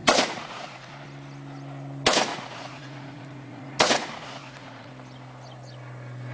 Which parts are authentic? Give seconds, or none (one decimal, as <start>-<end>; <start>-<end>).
0.9-2.3; 4.9-6.3